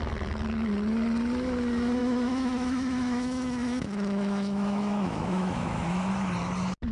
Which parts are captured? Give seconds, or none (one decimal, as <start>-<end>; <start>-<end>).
0.0-2.0; 6.1-6.9